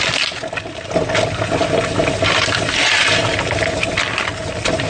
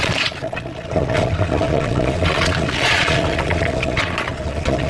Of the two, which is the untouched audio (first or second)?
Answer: first